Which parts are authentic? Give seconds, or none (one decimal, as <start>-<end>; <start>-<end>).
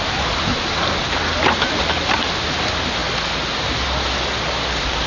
0.0-5.1